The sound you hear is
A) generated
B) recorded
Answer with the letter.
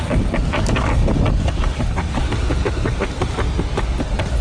B